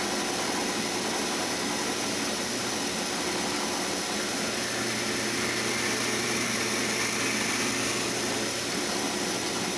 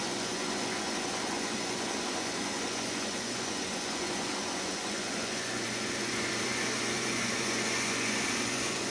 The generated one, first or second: second